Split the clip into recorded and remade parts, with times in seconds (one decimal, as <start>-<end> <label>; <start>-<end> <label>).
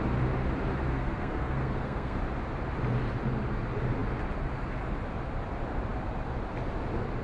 0.0-0.9 recorded; 0.9-2.2 remade; 2.2-7.2 recorded